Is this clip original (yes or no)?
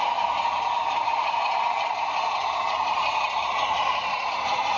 no